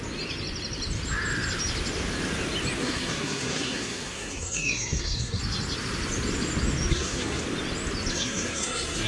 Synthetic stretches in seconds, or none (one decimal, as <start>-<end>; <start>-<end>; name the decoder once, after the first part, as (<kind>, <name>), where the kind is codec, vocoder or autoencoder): 2.8-5.4 (codec, SNAC); 6.9-7.4; 8.1-9.1

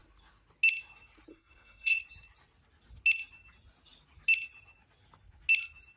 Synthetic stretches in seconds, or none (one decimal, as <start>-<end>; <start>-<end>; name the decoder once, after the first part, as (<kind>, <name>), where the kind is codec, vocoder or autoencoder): 1.3-2.0 (codec, SNAC)